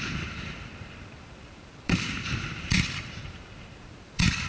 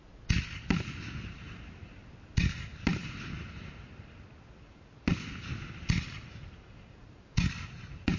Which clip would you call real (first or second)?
second